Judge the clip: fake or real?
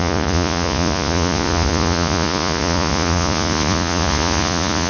fake